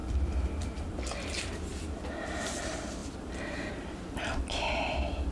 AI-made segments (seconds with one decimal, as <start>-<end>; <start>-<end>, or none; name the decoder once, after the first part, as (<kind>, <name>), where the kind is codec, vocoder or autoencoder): 0.6-5.3 (vocoder, BigVGAN v2)